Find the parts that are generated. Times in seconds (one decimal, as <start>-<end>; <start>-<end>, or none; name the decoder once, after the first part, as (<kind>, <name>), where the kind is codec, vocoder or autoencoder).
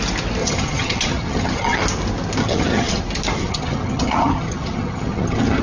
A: 0.4-1.8 (vocoder, HiFi-GAN); 2.4-3.0; 3.4-5.6